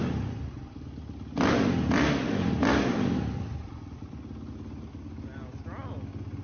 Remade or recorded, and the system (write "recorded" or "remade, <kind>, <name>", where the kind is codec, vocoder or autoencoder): recorded